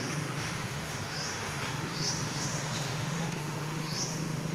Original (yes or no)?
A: no